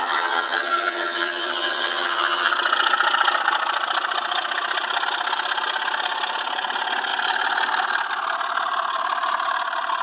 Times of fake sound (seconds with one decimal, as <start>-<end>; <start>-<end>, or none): 0.0-2.5